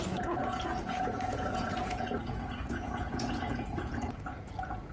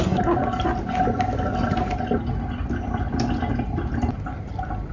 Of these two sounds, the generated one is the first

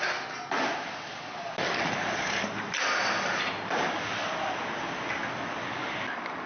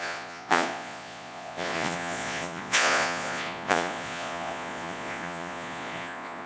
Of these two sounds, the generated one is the second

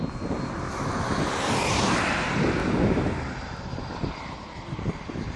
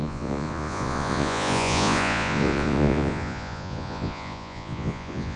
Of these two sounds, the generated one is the second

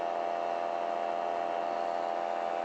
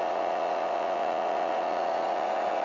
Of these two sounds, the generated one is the second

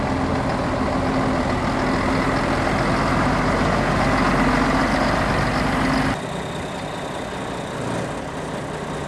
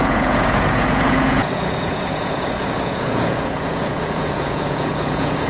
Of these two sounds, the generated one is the second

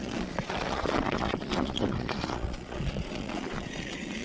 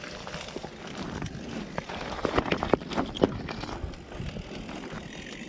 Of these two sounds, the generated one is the first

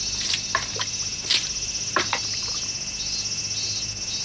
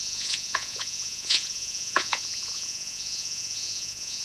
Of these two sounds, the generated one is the second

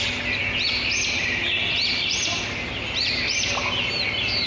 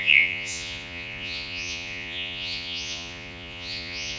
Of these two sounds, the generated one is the second